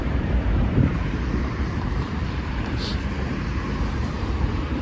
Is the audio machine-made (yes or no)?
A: yes